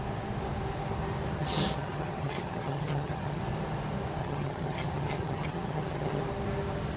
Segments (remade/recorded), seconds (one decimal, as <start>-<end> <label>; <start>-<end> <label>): 0.0-1.4 recorded; 1.4-3.4 remade; 3.4-4.2 recorded; 4.2-6.2 remade; 6.2-7.0 recorded